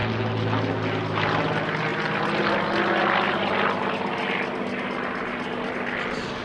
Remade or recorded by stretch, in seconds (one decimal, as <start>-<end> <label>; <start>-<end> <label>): 0.0-6.4 recorded